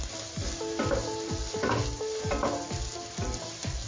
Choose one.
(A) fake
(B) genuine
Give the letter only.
B